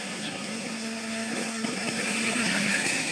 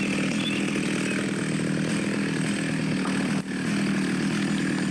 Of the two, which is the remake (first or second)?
first